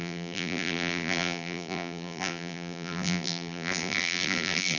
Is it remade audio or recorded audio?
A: remade